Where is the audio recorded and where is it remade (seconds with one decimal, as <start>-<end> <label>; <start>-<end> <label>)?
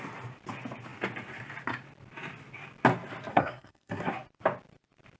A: 0.0-3.3 recorded; 3.3-4.1 remade; 4.1-5.2 recorded